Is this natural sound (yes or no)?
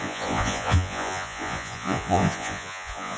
no